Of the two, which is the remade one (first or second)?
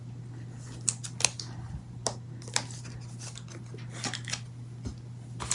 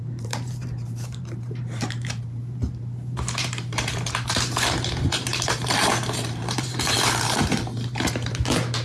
second